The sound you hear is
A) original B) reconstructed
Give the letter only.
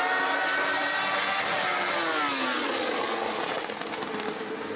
A